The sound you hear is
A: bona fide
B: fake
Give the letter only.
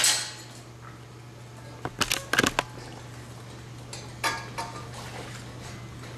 A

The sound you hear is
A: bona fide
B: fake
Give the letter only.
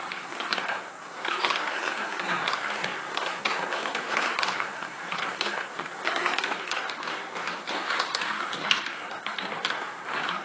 B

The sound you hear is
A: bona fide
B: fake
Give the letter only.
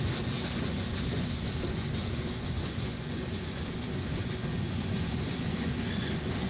B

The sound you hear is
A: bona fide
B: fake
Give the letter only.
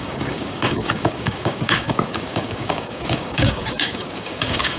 B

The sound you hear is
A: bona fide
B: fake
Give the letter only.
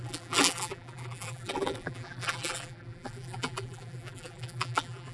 B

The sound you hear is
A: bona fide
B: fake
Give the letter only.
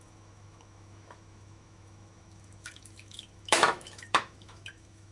B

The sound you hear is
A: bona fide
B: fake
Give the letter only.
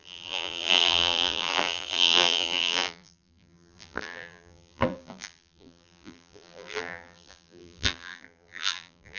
B